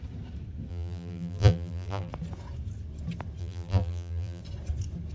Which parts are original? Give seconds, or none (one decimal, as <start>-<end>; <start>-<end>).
0.0-0.7; 2.1-3.4; 4.4-5.1